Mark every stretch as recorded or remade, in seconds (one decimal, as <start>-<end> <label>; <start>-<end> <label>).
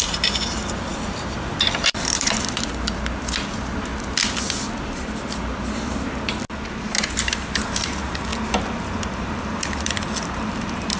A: 0.0-0.9 recorded; 0.9-2.7 remade; 2.7-8.3 recorded; 8.3-11.0 remade